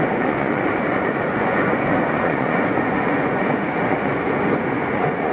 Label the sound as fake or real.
fake